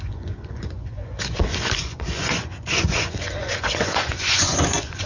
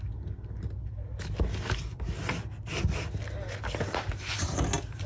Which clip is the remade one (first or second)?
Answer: first